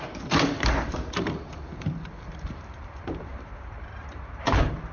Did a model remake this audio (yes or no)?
yes